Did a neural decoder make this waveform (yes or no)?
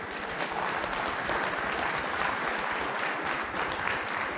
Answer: no